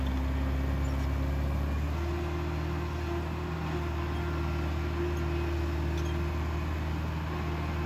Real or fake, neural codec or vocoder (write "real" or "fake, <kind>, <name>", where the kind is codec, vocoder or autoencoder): real